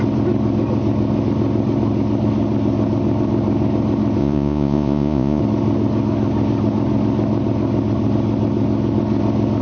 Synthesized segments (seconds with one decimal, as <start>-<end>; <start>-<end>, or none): 4.2-5.4